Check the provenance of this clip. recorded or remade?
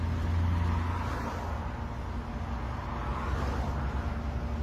recorded